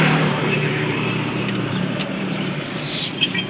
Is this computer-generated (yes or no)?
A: yes